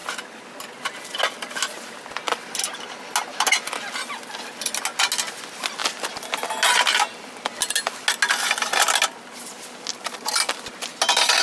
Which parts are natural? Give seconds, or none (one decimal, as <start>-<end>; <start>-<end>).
0.0-11.4

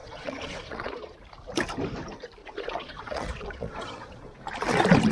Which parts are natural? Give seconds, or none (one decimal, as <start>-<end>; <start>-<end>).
1.2-2.4; 4.4-5.1

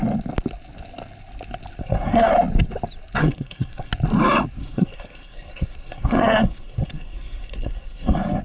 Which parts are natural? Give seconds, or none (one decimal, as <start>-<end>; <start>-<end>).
0.0-1.8; 2.3-3.2; 3.9-4.6

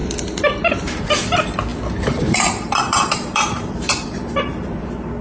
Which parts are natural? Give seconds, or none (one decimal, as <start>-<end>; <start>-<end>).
1.0-1.7; 4.8-5.2

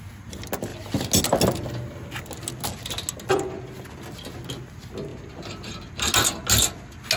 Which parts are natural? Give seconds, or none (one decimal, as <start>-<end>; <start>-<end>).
0.0-5.1; 6.1-7.2